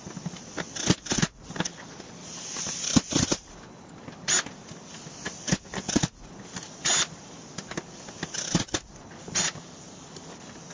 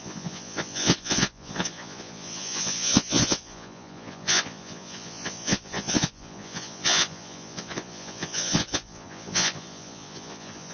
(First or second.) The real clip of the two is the first